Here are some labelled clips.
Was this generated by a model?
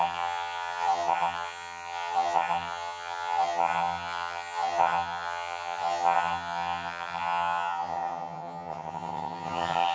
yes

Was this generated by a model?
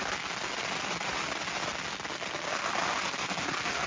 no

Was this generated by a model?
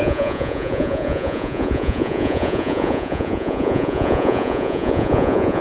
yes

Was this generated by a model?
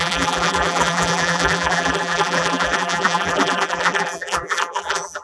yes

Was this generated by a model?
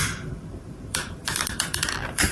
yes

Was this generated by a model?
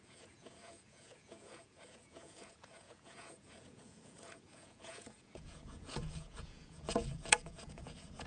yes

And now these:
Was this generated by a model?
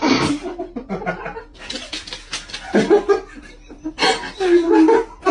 no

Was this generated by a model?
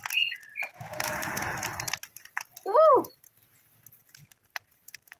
no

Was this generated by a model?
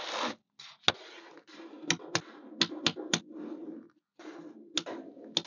no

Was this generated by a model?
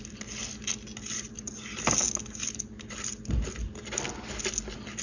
no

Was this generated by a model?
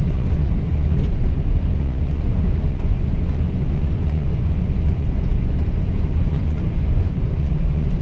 yes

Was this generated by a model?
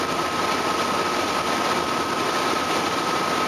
no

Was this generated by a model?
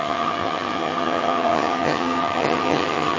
yes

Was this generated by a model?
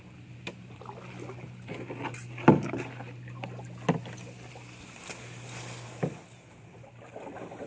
no